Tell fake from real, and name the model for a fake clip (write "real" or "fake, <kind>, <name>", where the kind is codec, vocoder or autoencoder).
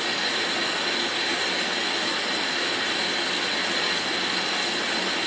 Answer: real